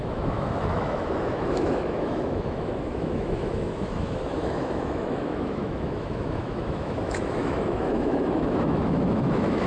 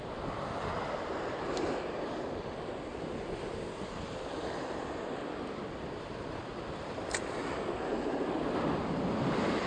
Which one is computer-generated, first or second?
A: first